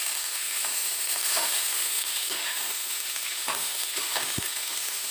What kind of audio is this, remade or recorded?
remade